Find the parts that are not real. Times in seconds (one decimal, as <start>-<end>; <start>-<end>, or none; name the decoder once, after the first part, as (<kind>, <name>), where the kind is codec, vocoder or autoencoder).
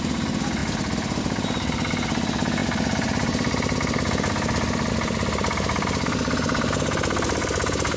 none